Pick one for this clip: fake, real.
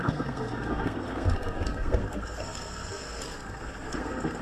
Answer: fake